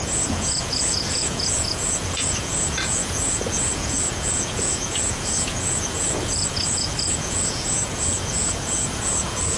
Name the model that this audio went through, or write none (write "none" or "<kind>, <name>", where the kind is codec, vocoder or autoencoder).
vocoder, Vocos